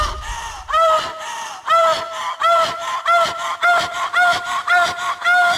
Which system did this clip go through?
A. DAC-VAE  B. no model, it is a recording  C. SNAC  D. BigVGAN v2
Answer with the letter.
B